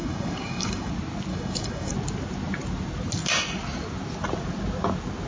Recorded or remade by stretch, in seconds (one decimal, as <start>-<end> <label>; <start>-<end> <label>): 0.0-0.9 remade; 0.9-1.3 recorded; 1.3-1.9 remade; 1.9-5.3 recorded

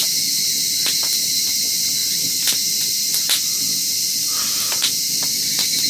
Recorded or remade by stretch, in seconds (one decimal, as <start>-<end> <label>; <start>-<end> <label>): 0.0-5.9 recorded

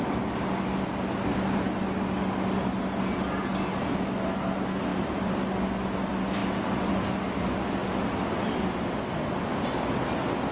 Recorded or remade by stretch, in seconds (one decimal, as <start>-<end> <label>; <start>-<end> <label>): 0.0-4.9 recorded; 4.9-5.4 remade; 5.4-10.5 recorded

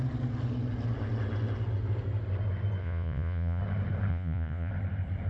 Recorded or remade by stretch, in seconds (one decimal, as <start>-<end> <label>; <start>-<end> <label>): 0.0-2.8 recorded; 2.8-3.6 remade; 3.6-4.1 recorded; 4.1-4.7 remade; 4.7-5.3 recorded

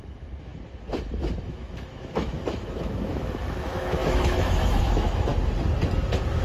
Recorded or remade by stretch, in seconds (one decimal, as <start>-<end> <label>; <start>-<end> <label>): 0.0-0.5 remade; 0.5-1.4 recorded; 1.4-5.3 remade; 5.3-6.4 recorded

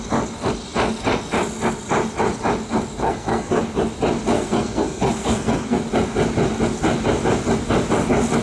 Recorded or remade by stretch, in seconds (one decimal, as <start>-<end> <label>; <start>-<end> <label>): 0.0-3.0 recorded; 3.0-3.6 remade; 3.6-4.3 recorded; 4.3-5.8 remade; 5.8-8.4 recorded

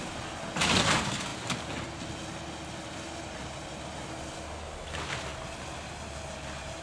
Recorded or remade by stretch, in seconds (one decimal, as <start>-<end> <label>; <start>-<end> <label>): 0.0-6.8 recorded